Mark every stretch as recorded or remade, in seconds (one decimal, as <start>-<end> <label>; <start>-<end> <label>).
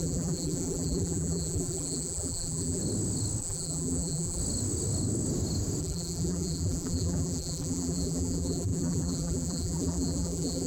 0.0-2.8 remade; 2.8-3.4 recorded; 3.4-4.4 remade; 4.4-5.8 recorded; 5.8-10.7 remade